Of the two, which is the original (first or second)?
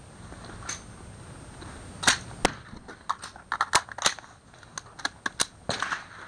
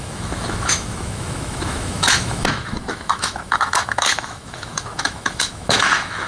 first